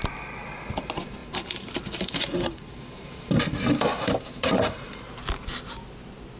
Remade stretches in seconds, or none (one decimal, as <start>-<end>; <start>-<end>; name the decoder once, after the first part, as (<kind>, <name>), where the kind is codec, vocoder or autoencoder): 1.2-5.0 (vocoder, BigVGAN v2)